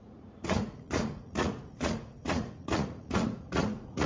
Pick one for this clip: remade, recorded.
remade